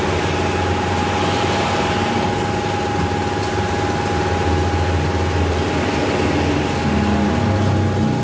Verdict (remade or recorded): recorded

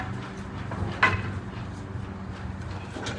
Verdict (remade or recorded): recorded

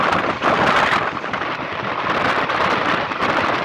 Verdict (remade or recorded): remade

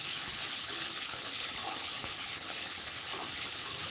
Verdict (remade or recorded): remade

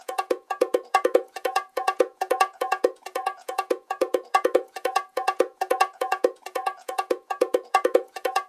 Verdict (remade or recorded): remade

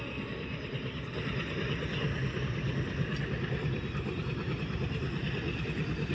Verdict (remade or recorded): recorded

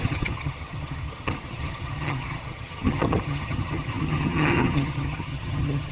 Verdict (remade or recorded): remade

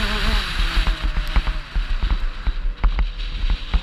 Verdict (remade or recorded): recorded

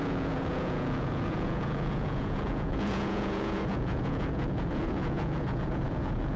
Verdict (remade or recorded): remade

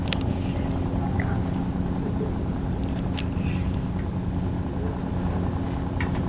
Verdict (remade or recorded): recorded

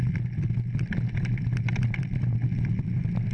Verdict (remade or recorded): recorded